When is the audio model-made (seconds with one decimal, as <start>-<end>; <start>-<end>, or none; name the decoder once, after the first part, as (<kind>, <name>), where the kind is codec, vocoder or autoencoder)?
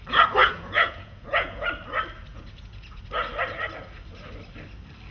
0.4-1.7 (vocoder, Vocos); 2.3-3.0